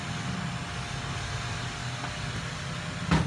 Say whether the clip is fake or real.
real